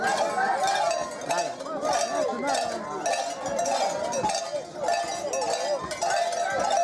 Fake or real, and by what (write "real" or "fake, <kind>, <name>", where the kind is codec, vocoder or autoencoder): real